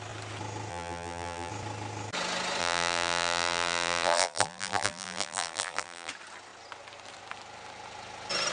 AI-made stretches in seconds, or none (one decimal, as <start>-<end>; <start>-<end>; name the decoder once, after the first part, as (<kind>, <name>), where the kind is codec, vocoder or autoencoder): 0.7-1.5 (vocoder, BigVGAN v2); 2.6-6.1